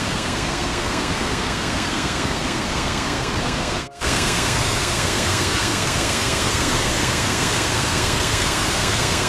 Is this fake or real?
fake